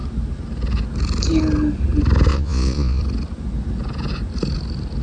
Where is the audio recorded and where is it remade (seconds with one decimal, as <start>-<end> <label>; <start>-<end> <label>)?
0.0-2.3 recorded; 2.3-3.0 remade; 3.0-5.0 recorded

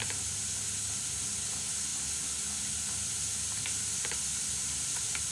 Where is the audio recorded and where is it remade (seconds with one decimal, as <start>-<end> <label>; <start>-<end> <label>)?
0.0-5.3 recorded

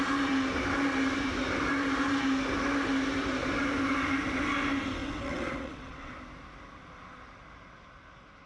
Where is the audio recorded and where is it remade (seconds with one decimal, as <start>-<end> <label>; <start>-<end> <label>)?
0.0-5.0 recorded; 5.0-6.1 remade; 6.1-8.5 recorded

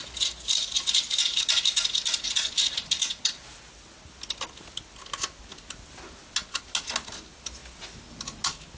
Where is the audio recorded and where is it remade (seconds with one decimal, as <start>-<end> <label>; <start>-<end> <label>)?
0.0-8.8 recorded